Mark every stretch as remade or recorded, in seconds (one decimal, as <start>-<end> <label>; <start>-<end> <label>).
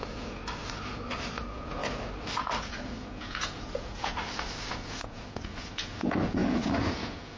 0.0-0.4 remade; 0.4-1.4 recorded; 1.4-1.8 remade; 1.8-2.7 recorded; 2.7-4.1 remade; 4.1-4.7 recorded; 4.7-7.4 remade